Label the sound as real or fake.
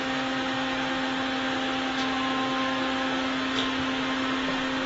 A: real